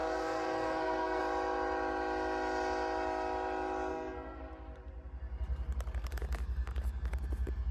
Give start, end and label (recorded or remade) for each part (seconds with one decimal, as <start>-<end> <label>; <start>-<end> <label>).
0.0-1.2 remade; 1.2-3.9 recorded; 3.9-4.4 remade; 4.4-7.7 recorded